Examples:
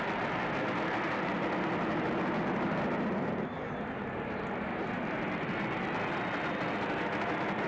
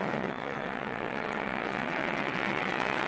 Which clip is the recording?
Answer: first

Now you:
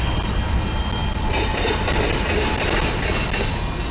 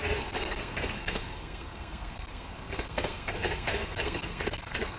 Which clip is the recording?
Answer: first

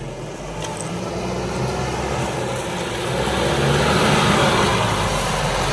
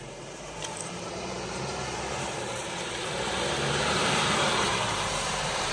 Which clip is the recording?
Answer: first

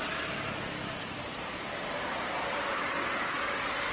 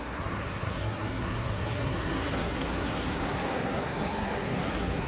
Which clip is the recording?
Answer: first